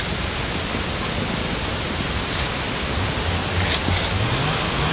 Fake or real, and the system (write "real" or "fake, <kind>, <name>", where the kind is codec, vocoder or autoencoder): real